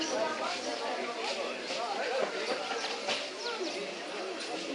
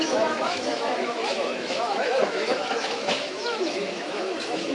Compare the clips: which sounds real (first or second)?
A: first